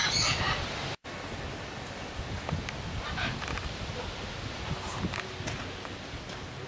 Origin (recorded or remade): recorded